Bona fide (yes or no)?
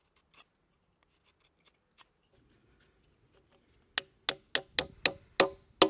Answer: yes